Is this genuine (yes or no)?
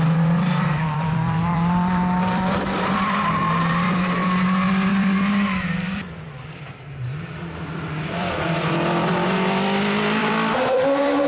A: no